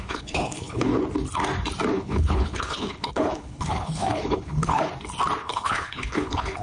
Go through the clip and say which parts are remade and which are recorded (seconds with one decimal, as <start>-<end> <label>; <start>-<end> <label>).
0.0-0.9 remade; 0.9-1.9 recorded; 1.9-4.9 remade; 4.9-5.4 recorded; 5.4-6.6 remade